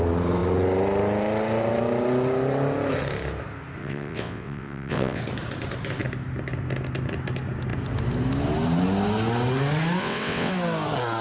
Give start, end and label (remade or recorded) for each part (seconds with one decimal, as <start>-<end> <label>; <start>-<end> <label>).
0.0-3.8 recorded; 3.8-5.2 remade; 5.2-10.0 recorded; 10.0-10.5 remade; 10.5-11.2 recorded